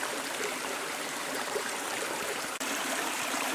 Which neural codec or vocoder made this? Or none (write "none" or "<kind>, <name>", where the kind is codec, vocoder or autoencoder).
vocoder, BigVGAN v2